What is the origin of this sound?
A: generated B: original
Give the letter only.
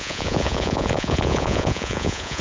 A